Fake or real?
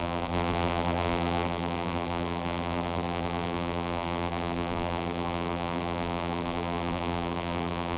fake